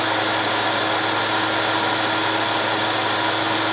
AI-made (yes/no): no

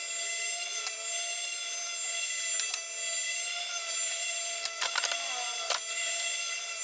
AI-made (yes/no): no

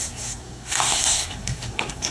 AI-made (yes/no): yes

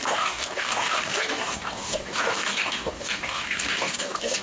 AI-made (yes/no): yes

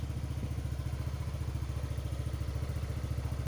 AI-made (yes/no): no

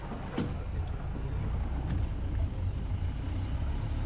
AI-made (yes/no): no